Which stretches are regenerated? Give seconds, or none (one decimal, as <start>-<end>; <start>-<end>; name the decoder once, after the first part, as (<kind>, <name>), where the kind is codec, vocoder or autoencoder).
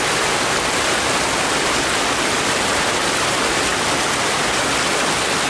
3.7-4.8 (vocoder, BigVGAN v2)